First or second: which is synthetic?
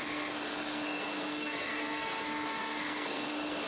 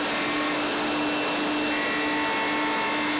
first